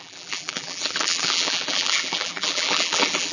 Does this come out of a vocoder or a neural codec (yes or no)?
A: yes